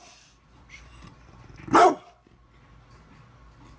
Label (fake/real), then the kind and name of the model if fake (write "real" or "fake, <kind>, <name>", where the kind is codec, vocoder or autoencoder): real